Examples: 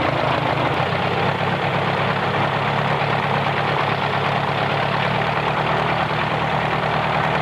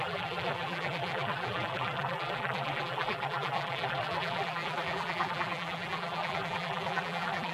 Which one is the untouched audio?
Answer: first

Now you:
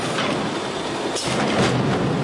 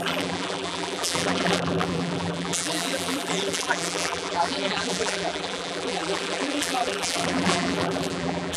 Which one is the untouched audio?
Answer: first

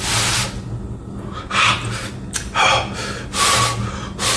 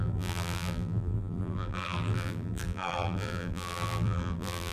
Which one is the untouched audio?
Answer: first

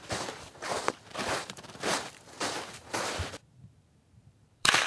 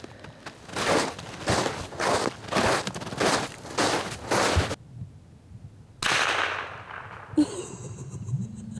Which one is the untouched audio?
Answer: second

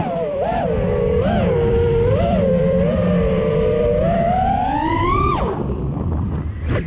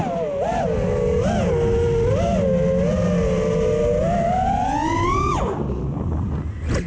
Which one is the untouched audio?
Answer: second